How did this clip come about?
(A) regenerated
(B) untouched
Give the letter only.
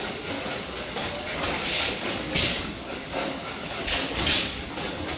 A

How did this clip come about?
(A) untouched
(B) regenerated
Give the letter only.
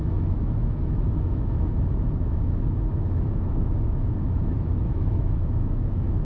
B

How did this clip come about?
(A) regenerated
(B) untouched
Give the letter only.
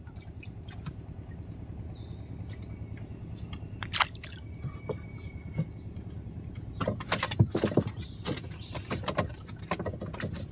B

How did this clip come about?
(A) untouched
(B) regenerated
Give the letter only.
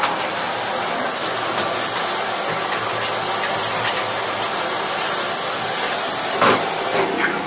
A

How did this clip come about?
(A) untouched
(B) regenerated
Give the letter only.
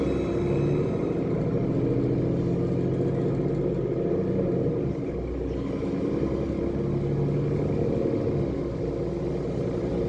A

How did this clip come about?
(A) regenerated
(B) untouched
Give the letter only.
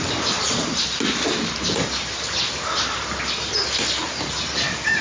B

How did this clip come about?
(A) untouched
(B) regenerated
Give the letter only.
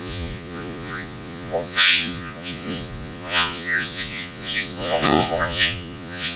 B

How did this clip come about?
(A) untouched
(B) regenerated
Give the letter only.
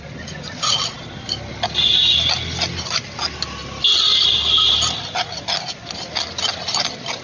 A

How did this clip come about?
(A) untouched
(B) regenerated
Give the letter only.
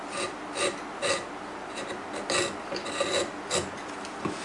A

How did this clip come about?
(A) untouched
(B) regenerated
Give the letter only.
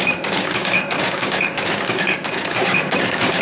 B